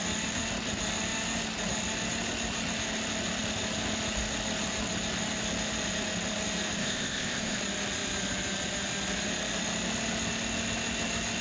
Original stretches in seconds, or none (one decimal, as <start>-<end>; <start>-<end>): 0.0-6.8; 7.6-11.4